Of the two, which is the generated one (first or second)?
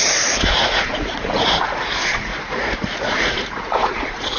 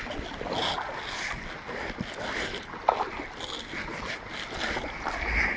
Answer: first